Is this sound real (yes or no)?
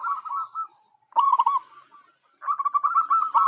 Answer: yes